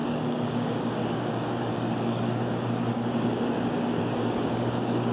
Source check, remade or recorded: remade